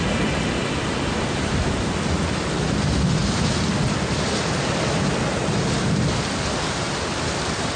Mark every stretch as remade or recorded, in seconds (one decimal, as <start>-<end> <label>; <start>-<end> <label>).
0.0-7.8 recorded